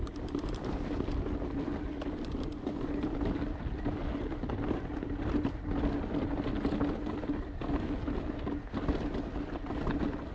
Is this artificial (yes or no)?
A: no